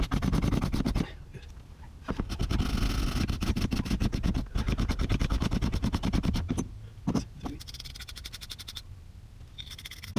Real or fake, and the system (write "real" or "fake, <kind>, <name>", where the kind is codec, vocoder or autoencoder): real